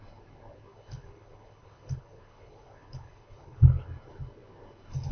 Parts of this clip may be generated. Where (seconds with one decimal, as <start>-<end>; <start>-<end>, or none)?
0.7-3.8